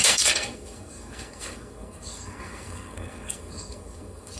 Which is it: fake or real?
fake